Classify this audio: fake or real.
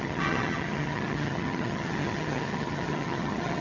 fake